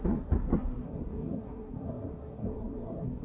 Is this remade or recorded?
remade